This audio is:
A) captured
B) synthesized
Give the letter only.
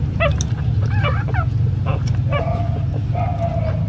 A